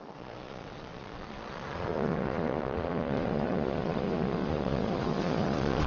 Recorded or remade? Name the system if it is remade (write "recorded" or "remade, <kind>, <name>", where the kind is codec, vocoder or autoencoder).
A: remade, vocoder, Vocos